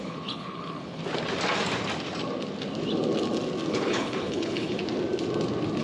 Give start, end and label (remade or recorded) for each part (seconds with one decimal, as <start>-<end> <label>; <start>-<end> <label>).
0.0-1.0 remade; 1.0-3.7 recorded; 3.7-4.8 remade; 4.8-5.8 recorded